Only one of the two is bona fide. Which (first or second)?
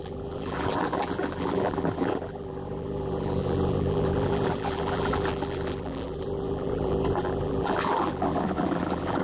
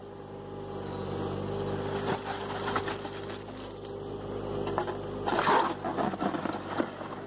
second